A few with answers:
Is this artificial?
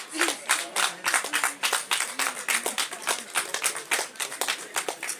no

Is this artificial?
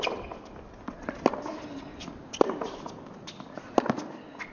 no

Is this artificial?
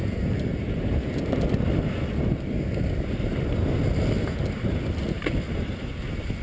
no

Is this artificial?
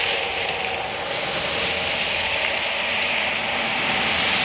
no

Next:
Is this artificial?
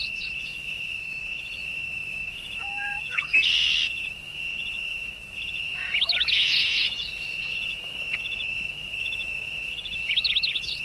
yes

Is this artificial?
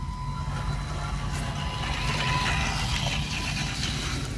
no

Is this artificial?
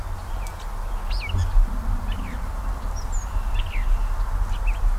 no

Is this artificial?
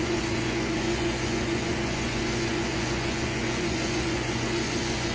yes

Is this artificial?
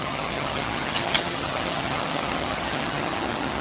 yes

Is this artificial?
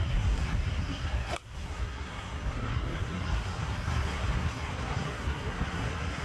yes